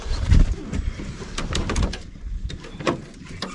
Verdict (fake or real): fake